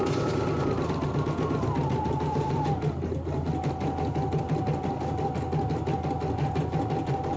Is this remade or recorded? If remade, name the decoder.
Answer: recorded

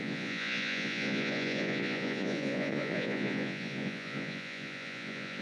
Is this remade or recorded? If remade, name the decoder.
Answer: remade, vocoder, Vocos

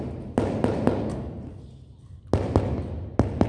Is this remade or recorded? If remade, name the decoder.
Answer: recorded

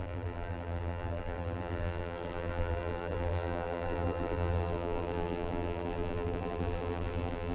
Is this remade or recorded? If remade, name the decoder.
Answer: remade, vocoder, BigVGAN v2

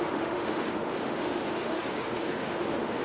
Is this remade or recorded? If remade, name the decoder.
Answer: remade, autoencoder, DAC-VAE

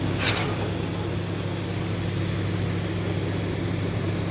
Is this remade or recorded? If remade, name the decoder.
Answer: recorded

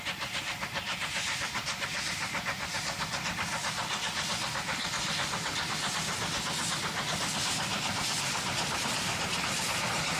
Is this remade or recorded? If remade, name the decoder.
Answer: recorded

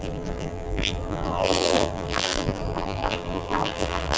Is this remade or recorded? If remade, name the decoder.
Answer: remade, vocoder, BigVGAN v2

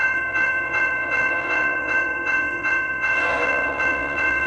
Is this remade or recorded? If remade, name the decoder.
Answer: remade, vocoder, WaveNeXt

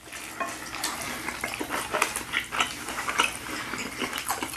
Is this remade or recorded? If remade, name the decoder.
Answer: recorded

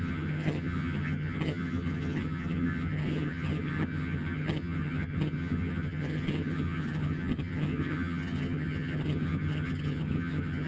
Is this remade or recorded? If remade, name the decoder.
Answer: remade, vocoder, HiFi-GAN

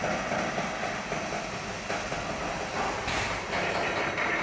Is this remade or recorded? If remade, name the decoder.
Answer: recorded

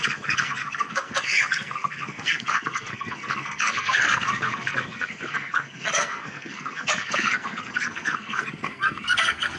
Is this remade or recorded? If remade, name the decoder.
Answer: remade, codec, SNAC